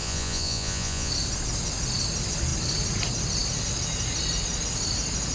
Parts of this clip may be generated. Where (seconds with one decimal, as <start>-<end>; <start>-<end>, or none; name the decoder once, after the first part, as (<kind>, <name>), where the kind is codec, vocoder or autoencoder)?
0.0-1.1 (vocoder, Vocos)